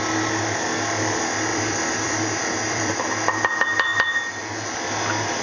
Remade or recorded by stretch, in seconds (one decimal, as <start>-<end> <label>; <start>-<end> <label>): 0.0-1.5 recorded; 1.5-3.0 remade; 3.0-5.4 recorded